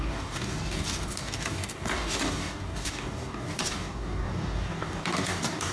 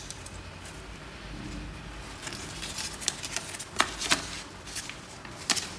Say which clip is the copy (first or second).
first